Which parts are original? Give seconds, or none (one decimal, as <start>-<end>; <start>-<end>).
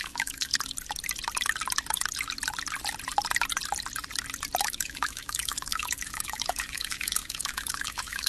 0.5-4.6